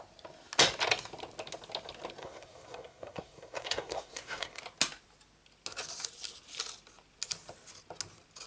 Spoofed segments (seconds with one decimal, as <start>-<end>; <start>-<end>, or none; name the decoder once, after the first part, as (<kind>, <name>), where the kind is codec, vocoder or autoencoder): 2.2-4.6 (codec, SNAC)